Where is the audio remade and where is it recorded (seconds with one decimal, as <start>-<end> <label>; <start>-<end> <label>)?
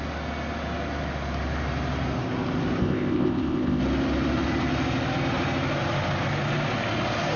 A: 0.0-2.8 recorded; 2.8-3.8 remade; 3.8-7.4 recorded